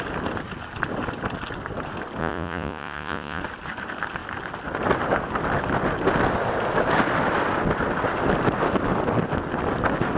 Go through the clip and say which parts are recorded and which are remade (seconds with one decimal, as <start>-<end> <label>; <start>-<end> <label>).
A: 0.0-2.2 recorded; 2.2-3.4 remade; 3.4-10.2 recorded